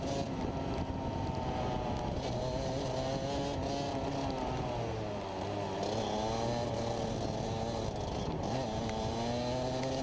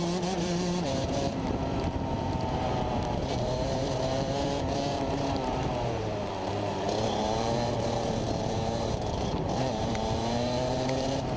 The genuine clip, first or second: first